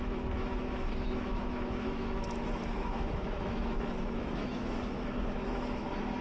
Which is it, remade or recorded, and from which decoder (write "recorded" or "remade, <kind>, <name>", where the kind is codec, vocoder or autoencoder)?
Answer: remade, autoencoder, DAC-VAE